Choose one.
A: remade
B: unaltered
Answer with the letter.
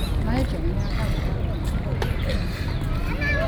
B